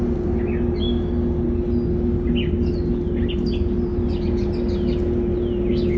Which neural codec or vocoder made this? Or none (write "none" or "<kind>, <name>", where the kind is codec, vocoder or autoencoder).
none